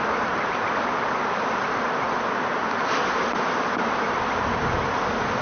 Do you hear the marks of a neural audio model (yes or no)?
yes